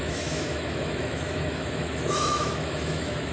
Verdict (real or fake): fake